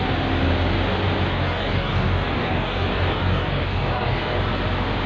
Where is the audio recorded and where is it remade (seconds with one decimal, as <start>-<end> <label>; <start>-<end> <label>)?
0.0-1.3 recorded; 1.3-4.4 remade; 4.4-5.1 recorded